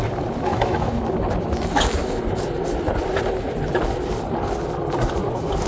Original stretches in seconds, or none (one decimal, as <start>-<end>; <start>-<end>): 0.0-0.5; 1.0-5.7